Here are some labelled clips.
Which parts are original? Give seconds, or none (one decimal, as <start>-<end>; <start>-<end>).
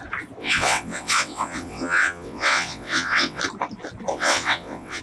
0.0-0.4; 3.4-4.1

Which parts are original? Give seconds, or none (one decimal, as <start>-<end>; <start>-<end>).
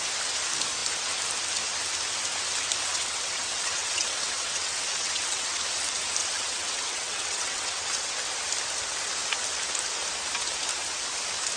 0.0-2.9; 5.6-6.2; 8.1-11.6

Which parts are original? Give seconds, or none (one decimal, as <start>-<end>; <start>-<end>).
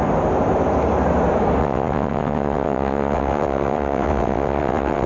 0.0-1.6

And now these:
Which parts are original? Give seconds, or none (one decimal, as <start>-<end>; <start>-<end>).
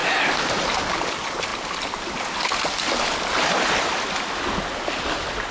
0.0-5.5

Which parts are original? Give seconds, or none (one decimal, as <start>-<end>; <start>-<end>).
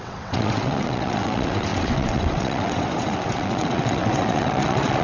none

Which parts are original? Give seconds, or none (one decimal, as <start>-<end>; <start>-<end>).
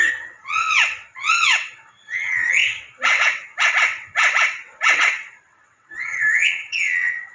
none